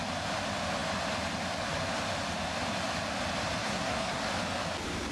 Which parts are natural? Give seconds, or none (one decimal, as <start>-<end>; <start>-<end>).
0.0-3.6; 4.2-5.1